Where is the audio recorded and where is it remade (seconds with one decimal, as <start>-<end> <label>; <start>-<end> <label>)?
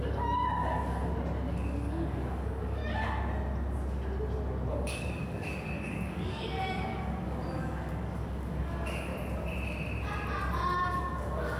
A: 0.0-1.1 remade; 1.1-1.6 recorded; 1.6-2.8 remade; 2.8-4.7 recorded; 4.7-9.1 remade; 9.1-10.8 recorded; 10.8-11.6 remade